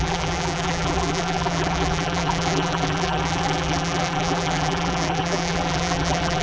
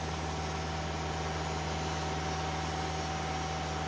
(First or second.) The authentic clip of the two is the second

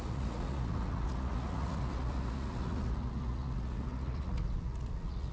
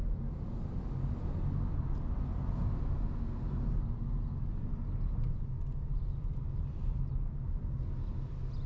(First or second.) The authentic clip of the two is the second